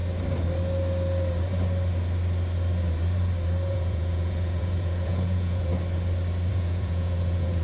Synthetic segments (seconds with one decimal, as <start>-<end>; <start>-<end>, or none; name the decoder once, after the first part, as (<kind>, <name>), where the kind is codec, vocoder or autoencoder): 3.7-5.7 (vocoder, Vocos); 6.5-7.6